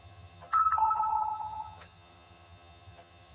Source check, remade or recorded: remade